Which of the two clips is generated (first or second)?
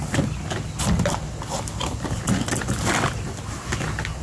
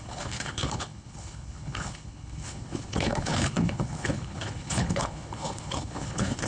second